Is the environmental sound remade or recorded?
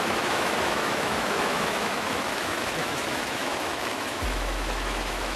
remade